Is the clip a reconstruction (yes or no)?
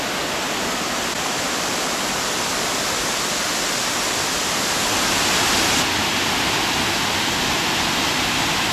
no